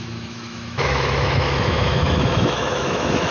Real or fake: fake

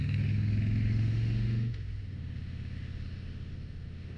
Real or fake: fake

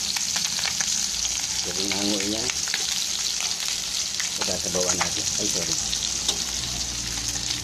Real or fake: real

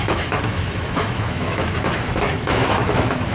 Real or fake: fake